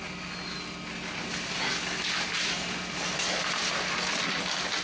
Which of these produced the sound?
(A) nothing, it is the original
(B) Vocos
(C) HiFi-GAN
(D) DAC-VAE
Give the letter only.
A